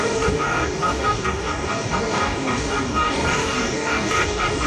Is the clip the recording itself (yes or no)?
no